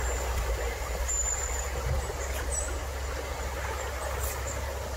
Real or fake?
real